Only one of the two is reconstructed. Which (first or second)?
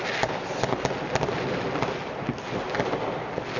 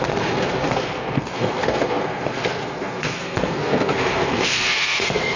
second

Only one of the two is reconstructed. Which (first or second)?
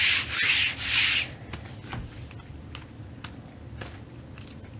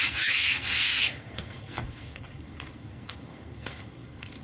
second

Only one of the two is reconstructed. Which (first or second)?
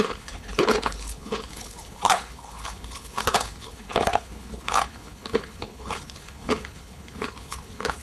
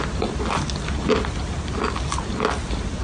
first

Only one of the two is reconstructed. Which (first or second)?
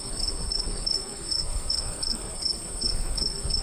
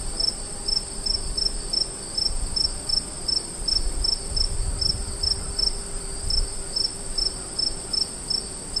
first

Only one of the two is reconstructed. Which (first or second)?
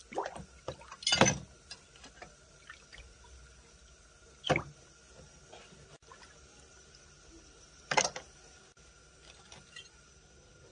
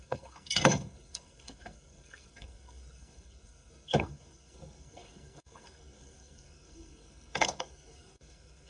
second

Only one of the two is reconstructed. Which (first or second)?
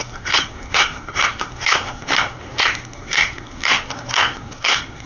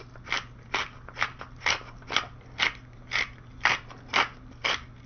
first